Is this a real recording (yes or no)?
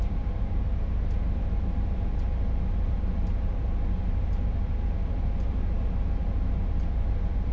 no